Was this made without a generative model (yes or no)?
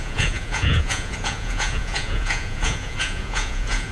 no